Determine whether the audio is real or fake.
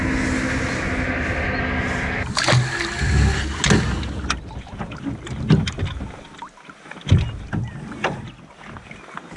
real